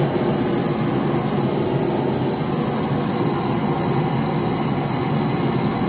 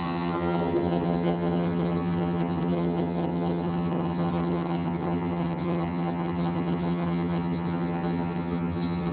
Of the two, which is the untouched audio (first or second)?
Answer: first